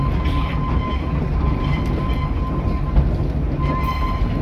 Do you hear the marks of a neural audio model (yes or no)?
no